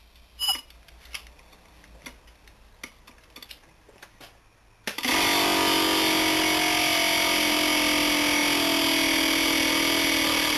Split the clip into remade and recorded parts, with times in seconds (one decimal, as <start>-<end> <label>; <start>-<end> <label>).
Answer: 0.0-10.6 recorded